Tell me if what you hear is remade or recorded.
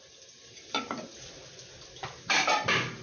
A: recorded